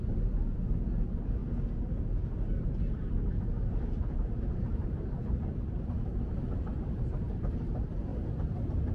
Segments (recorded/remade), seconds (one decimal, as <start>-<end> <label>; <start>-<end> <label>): 0.0-3.3 recorded; 3.3-7.5 remade; 7.5-8.1 recorded; 8.1-8.9 remade

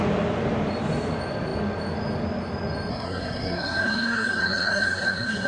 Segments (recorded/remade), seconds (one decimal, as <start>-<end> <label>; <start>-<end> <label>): 0.0-2.9 recorded; 2.9-5.5 remade